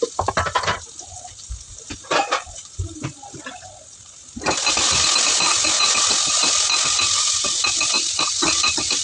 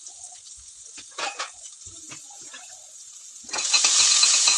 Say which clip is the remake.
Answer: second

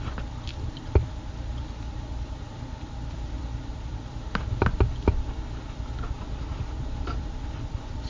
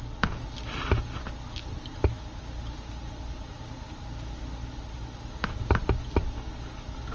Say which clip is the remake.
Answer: first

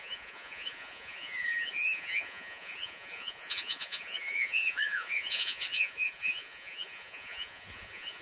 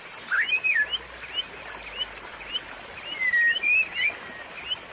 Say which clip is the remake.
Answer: first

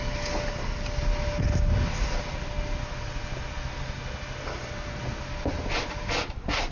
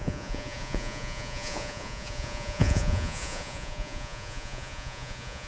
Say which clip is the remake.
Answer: second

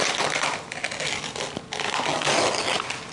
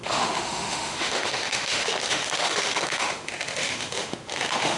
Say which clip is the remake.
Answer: second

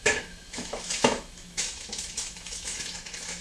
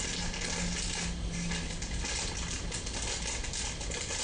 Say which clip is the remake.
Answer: first